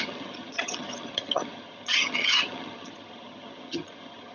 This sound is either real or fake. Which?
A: fake